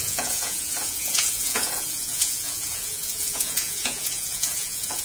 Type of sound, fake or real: fake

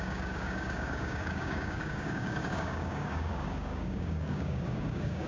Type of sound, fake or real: fake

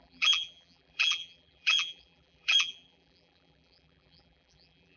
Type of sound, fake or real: fake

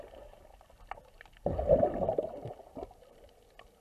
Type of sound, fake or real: real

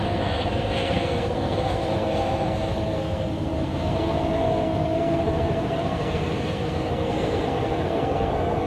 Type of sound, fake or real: fake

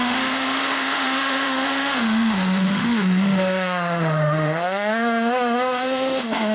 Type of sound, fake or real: fake